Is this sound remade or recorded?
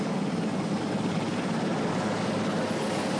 recorded